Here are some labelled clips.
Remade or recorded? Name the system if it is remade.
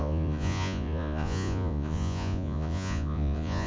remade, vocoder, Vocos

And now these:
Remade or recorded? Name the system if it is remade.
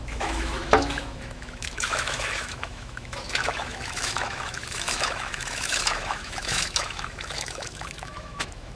remade, autoencoder, DAC-VAE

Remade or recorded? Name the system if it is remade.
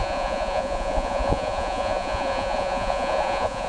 remade, vocoder, Vocos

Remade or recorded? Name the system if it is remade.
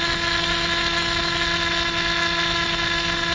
recorded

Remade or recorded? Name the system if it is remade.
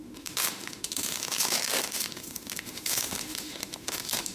remade, autoencoder, DAC-VAE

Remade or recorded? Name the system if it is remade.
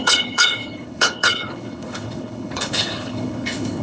remade, codec, HILCodec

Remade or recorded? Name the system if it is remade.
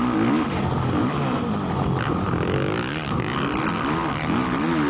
recorded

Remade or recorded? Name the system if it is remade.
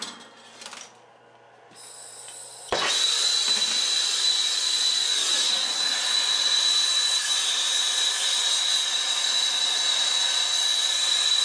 recorded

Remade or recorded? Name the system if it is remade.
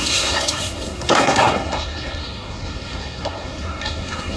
remade, codec, SNAC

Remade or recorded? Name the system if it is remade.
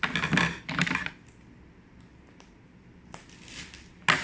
recorded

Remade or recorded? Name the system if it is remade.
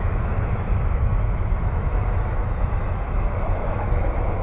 remade, autoencoder, DAC-VAE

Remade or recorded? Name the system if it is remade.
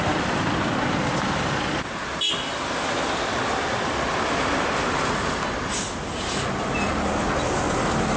recorded